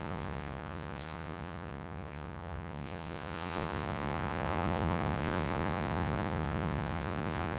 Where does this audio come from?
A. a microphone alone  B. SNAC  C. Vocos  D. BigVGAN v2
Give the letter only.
C